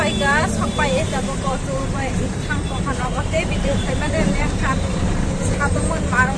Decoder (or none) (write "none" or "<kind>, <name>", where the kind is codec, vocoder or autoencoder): vocoder, BigVGAN v2